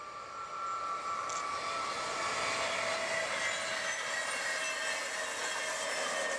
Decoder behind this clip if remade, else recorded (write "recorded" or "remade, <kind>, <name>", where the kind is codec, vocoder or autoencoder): recorded